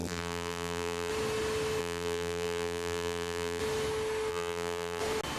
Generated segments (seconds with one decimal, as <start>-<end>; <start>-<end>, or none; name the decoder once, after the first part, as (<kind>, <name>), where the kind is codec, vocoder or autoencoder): 0.0-1.1 (vocoder, BigVGAN v2); 1.8-3.6; 4.3-5.0